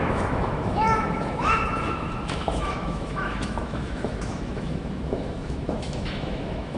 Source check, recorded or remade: remade